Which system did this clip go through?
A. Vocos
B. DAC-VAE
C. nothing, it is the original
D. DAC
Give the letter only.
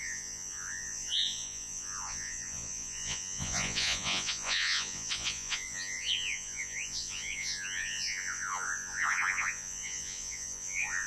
A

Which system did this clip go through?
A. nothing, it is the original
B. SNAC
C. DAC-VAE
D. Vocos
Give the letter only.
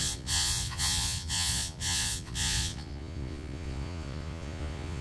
D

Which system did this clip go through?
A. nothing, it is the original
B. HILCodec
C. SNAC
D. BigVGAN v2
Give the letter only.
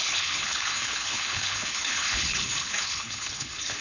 B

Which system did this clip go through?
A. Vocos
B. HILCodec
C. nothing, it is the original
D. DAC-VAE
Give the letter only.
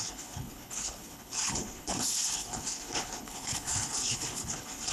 B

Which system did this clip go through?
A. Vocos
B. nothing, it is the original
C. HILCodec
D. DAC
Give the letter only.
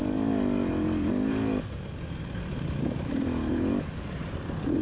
B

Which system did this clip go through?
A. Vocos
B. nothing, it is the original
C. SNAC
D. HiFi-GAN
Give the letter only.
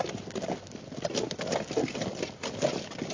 B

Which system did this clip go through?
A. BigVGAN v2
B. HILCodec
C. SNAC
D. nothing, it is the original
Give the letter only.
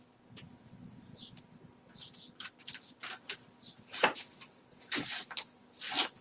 D